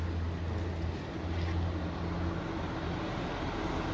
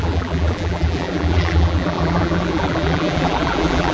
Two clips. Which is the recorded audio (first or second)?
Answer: first